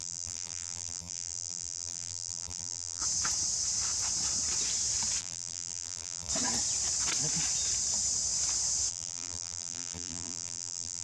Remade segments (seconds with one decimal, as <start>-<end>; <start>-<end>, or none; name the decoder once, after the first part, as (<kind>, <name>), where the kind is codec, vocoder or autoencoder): 0.0-3.0 (vocoder, BigVGAN v2); 5.2-6.3; 8.9-11.0